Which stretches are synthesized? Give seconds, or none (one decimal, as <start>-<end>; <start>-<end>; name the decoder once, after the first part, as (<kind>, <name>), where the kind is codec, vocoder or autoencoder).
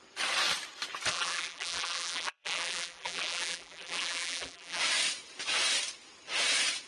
1.1-4.8 (vocoder, BigVGAN v2)